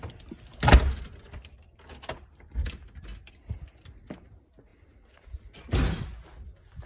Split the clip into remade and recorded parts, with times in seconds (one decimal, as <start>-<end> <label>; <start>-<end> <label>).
0.0-6.9 recorded